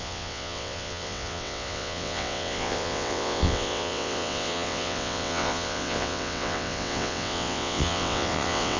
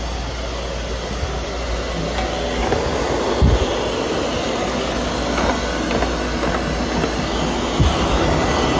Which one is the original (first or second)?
second